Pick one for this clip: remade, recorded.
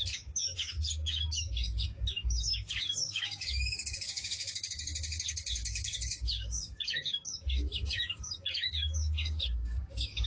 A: remade